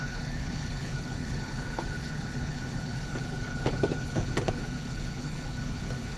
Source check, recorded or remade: remade